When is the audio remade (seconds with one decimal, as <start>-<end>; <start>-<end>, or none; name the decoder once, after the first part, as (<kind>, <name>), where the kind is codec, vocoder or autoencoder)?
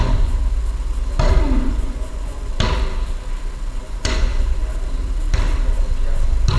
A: 0.0-0.4 (vocoder, Vocos); 1.7-2.5; 3.8-4.6